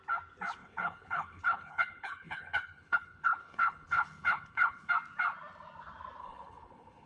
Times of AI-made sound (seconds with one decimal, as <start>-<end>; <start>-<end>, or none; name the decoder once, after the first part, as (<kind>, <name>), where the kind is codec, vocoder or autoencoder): 0.6-4.9 (codec, HILCodec); 6.2-7.1